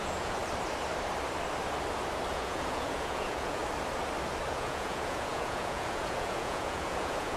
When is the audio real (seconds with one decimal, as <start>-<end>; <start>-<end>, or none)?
0.4-2.3; 3.6-4.5